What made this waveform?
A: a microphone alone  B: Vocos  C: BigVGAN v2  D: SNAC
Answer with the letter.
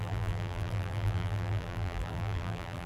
C